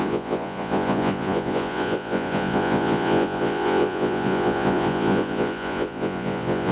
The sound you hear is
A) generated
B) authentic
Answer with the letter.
A